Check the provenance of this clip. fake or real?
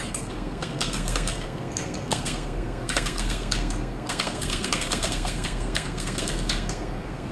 fake